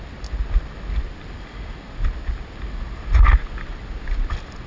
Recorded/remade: recorded